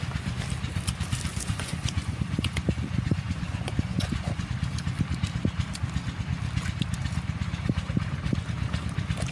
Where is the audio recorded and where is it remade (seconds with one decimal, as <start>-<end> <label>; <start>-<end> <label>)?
0.0-1.3 recorded; 1.3-4.5 remade; 4.5-9.3 recorded